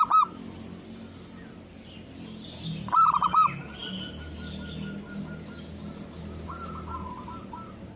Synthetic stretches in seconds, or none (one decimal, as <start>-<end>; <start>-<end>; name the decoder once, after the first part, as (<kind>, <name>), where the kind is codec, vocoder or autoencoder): none